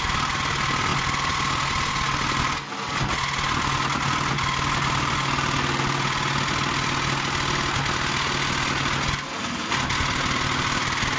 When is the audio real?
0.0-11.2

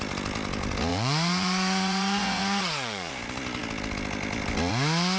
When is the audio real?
0.0-0.9; 3.1-5.2

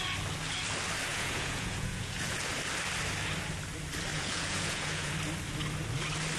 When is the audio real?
0.0-1.1; 2.4-4.1; 5.1-6.4

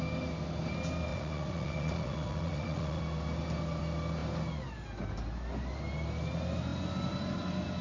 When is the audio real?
0.0-1.1; 3.0-7.8

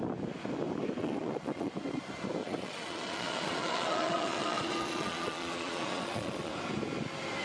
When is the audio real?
0.0-1.0; 1.7-2.4; 6.5-7.4

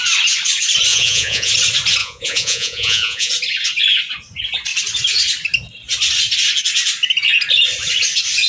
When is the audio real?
0.0-0.9; 1.5-2.0; 3.3-8.5

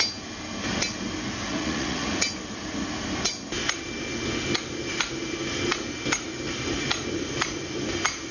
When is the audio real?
0.0-1.5; 2.1-8.3

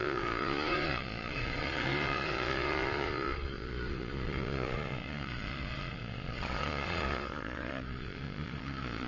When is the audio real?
none